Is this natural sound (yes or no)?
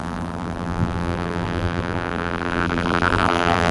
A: no